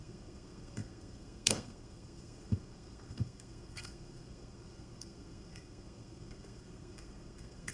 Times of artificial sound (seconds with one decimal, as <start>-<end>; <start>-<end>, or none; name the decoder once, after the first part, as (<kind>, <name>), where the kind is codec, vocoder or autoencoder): 0.0-7.7 (codec, SNAC)

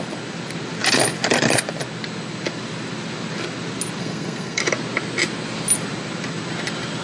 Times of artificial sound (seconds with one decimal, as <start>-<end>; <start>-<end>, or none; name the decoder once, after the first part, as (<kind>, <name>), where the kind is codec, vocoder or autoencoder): 4.0-4.6 (codec, SNAC)

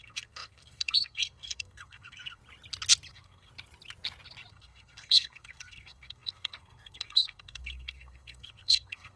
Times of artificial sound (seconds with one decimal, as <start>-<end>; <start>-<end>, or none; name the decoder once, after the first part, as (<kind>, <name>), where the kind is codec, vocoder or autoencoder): 0.0-2.4 (codec, SNAC); 3.1-3.5; 4.5-9.2

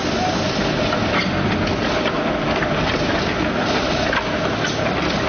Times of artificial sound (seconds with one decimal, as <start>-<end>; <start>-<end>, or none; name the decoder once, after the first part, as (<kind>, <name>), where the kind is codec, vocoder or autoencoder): none